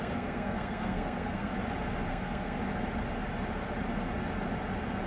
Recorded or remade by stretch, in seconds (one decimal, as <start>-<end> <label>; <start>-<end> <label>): 0.0-1.5 remade; 1.5-2.1 recorded; 2.1-2.6 remade; 2.6-5.1 recorded